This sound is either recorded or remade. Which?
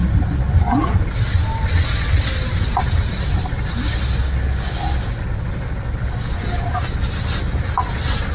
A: recorded